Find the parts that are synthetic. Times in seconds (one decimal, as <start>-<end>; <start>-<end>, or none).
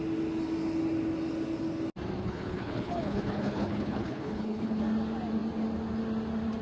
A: 2.2-4.8